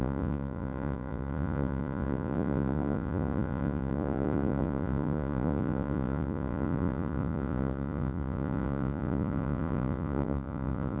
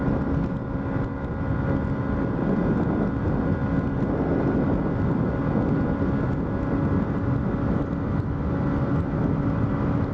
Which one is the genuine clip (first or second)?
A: second